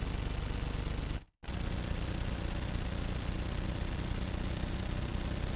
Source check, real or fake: real